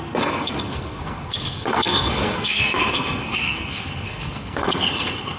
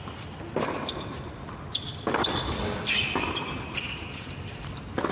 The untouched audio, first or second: second